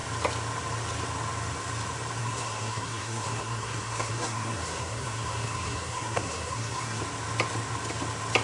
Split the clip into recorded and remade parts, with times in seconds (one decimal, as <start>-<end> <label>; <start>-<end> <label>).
0.0-2.2 recorded; 2.2-7.0 remade; 7.0-8.4 recorded